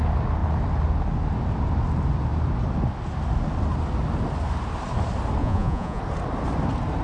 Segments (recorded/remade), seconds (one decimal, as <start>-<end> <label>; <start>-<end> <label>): 0.0-5.4 recorded; 5.4-6.0 remade; 6.0-7.0 recorded